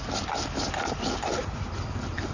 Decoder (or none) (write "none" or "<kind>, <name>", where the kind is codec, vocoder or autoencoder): none